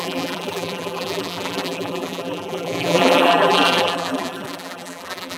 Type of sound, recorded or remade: remade